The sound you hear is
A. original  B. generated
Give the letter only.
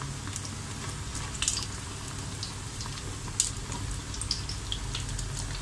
A